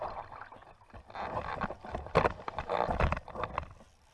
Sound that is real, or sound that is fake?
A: real